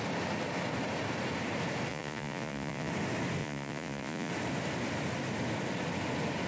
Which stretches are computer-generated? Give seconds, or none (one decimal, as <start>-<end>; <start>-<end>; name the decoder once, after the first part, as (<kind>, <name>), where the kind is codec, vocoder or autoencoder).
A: 1.9-2.9 (vocoder, Vocos); 3.4-4.3